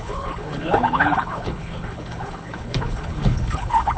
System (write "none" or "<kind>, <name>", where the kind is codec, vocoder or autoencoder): codec, HILCodec